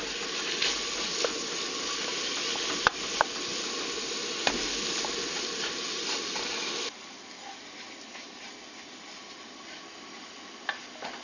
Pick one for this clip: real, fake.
real